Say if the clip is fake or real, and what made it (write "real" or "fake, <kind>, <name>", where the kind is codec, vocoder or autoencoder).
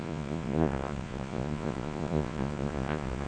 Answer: fake, vocoder, Vocos